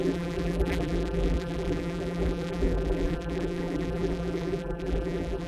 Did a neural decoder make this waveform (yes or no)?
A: yes